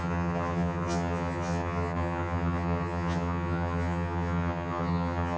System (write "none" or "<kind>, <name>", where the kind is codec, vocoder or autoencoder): vocoder, HiFi-GAN